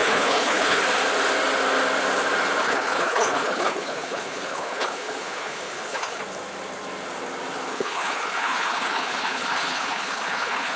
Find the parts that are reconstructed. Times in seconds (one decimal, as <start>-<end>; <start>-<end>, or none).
0.0-0.8; 2.6-6.2; 7.7-10.8